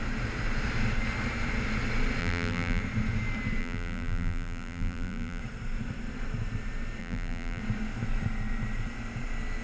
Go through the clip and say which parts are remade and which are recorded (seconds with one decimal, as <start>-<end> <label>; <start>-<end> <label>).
0.0-2.2 recorded; 2.2-2.8 remade; 2.8-3.6 recorded; 3.6-5.4 remade; 5.4-7.0 recorded; 7.0-7.6 remade; 7.6-9.6 recorded